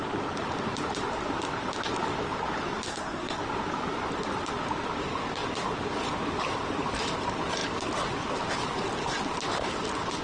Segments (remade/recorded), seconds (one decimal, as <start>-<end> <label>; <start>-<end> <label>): 0.0-2.9 recorded; 2.9-3.4 remade; 3.4-10.2 recorded